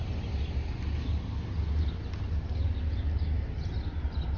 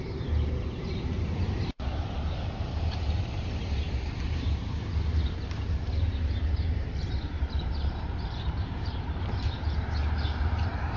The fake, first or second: second